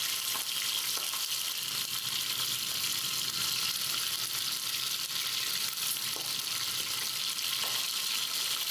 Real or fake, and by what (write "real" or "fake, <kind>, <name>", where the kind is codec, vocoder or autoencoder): real